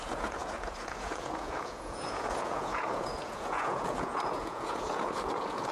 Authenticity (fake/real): fake